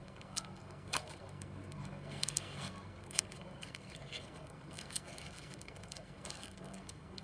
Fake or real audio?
fake